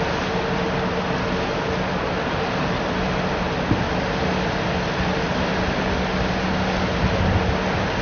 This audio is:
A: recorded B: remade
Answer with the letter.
A